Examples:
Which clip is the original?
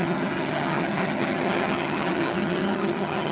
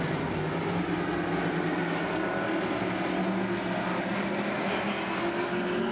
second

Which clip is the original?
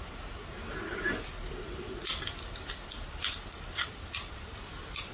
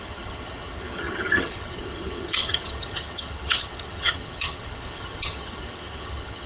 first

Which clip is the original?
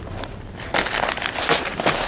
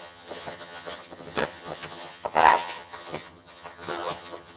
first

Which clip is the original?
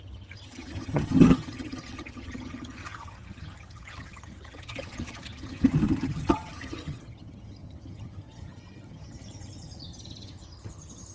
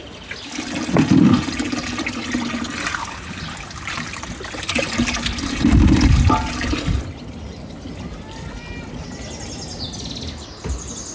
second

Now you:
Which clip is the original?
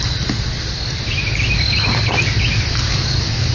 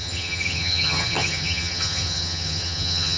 first